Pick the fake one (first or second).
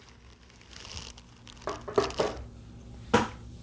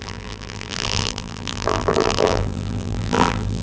second